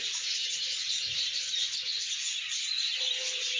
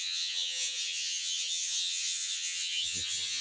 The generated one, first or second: second